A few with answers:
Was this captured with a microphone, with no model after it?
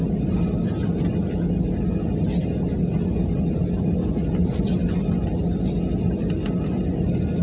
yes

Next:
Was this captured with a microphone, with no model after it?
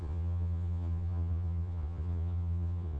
no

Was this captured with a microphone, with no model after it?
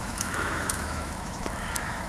no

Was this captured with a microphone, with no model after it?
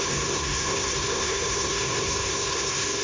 no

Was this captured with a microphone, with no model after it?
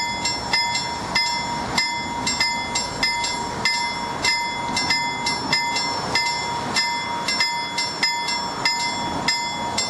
yes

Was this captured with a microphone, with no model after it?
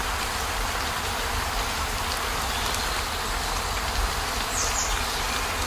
yes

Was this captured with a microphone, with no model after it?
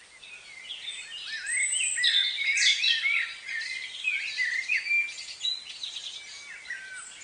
yes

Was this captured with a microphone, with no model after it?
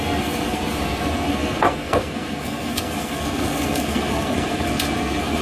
no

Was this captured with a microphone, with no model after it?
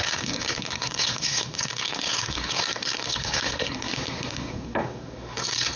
no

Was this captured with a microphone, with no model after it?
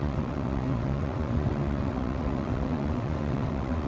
no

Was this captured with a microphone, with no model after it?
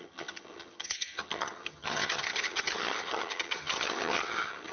no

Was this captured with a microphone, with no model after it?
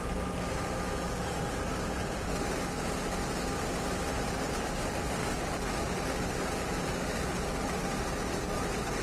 yes